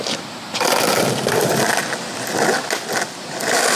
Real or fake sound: real